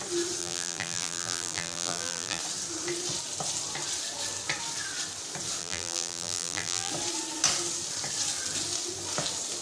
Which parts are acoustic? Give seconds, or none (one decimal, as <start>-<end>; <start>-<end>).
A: 0.0-0.4; 2.4-5.6; 6.9-9.6